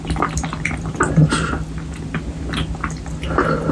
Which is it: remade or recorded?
recorded